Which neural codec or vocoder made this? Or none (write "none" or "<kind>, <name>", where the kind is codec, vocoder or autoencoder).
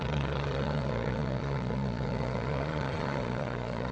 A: vocoder, Vocos